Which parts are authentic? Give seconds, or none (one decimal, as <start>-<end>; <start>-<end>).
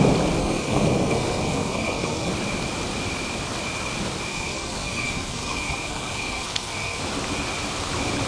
0.0-0.4; 2.3-4.3; 7.0-8.3